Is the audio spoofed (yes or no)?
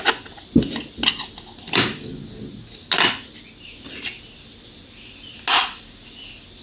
no